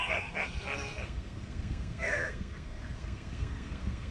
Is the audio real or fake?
fake